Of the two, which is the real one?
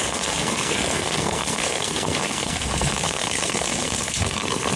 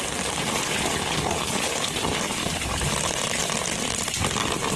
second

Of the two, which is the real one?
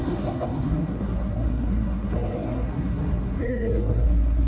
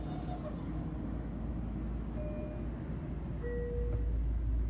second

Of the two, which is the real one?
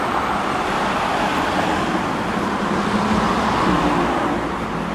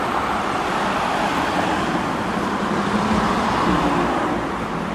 first